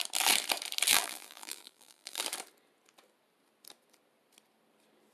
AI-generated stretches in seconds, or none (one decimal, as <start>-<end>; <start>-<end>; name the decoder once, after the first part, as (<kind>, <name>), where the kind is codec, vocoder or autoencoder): 0.9-2.2 (vocoder, BigVGAN v2)